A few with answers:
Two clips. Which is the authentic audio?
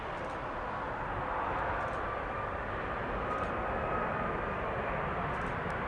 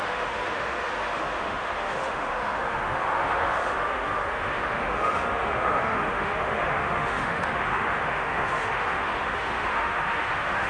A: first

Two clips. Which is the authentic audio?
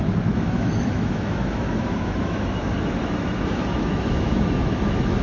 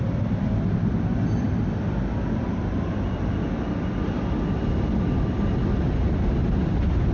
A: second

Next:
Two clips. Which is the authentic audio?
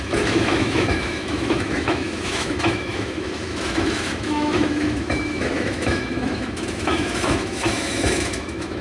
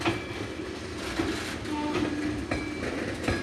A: second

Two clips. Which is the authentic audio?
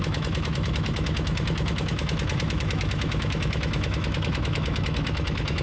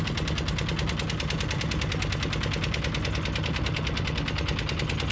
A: second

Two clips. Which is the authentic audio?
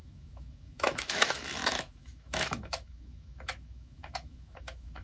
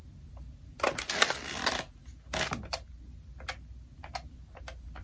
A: second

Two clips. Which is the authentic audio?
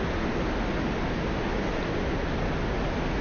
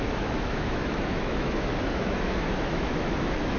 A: first